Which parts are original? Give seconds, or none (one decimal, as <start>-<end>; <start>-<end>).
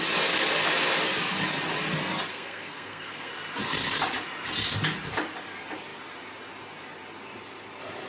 0.0-2.3; 3.3-8.1